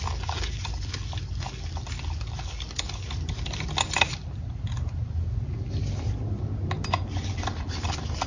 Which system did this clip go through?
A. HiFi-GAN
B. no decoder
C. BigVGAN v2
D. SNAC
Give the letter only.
B